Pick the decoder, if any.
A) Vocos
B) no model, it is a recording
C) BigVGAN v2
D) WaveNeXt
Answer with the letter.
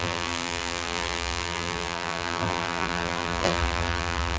C